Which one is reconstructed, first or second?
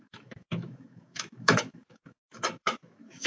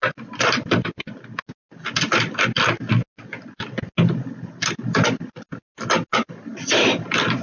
first